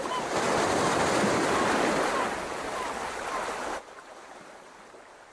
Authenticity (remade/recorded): recorded